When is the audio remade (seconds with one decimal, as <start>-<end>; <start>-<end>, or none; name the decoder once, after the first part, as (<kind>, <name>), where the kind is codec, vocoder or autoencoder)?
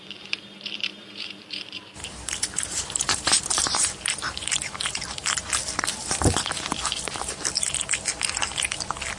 0.0-5.6 (vocoder, BigVGAN v2)